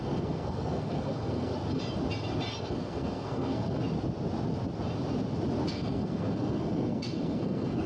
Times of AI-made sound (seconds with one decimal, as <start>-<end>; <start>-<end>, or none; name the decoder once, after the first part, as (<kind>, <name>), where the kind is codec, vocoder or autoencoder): 0.0-1.5 (codec, SNAC); 2.6-3.8; 5.7-7.9